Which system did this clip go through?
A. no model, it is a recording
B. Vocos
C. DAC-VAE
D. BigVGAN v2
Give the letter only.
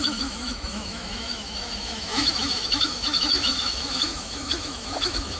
C